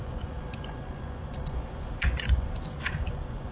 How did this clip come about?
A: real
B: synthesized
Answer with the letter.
B